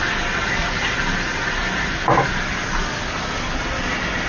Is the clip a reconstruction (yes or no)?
no